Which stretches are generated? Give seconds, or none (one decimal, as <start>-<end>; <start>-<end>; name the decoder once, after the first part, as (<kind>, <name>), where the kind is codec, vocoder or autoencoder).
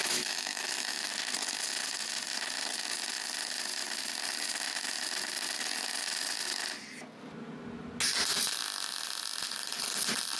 0.0-1.1 (autoencoder, DAC-VAE)